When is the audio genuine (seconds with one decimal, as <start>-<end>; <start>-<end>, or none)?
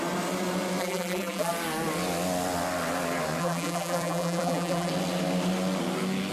0.0-0.8; 1.5-3.4; 4.9-6.3